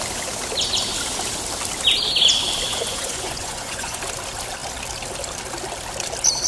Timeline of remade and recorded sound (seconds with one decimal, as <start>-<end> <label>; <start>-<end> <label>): 0.0-2.7 recorded; 2.7-4.0 remade; 4.0-6.5 recorded